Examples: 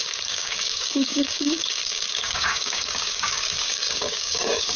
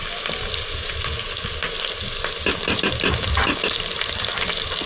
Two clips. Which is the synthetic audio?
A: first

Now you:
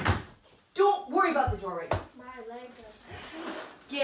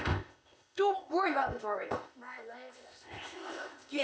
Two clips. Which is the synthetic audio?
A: second